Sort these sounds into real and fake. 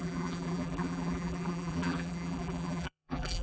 fake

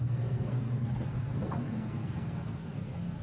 fake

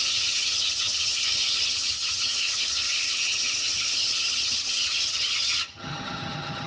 fake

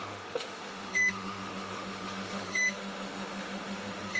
fake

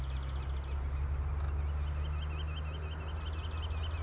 real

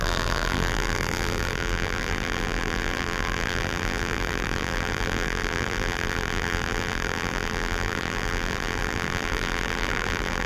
fake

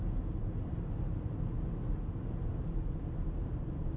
real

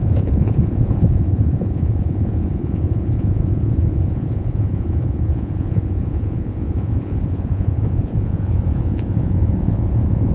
fake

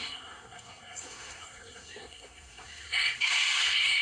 fake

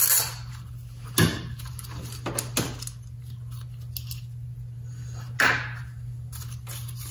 real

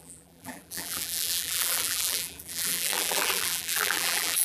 fake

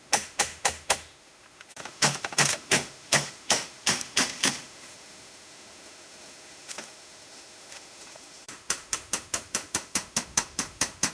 fake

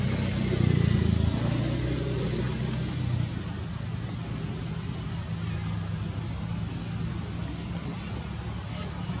real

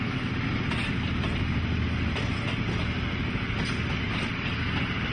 real